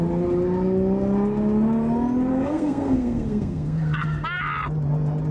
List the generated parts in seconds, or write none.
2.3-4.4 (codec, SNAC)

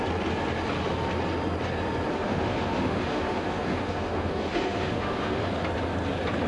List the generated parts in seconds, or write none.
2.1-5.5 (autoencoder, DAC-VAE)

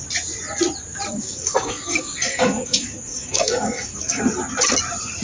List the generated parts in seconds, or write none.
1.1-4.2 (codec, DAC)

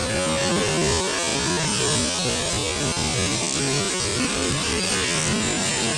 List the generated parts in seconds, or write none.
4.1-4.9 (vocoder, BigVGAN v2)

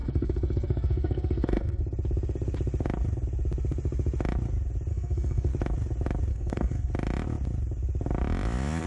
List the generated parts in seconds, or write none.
0.0-1.8 (codec, SNAC); 4.9-5.5; 6.3-6.9